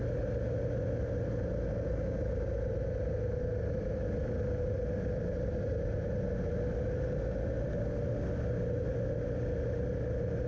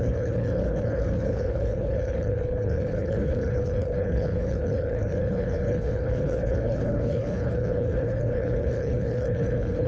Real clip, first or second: first